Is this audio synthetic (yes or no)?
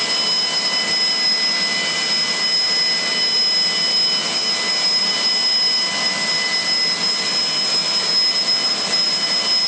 no